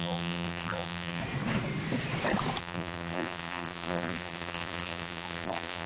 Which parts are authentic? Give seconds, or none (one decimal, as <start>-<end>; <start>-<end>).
1.2-2.6